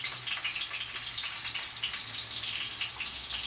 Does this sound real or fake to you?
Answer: real